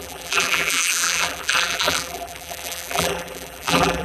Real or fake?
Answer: fake